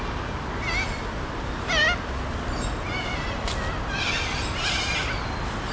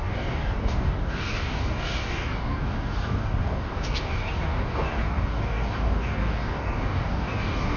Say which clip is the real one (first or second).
first